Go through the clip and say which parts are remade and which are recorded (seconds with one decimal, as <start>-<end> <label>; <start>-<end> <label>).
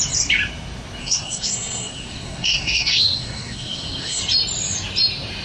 0.0-1.0 recorded; 1.0-4.2 remade; 4.2-5.4 recorded